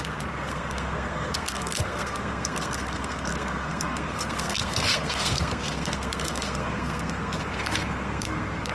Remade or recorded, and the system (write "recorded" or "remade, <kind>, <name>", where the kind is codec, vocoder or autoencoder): remade, codec, SNAC